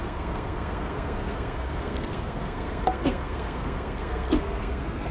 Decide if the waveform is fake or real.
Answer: fake